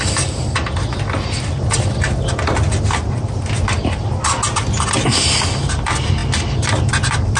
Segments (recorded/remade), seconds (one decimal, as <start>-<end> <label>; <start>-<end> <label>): 0.0-7.4 recorded